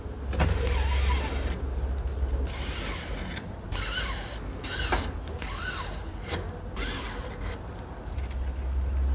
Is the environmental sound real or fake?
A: real